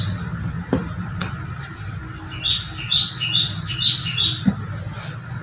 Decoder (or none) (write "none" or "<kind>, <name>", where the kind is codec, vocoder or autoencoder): none